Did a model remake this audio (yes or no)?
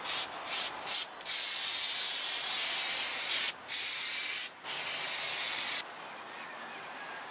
no